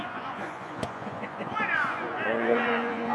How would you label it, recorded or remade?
remade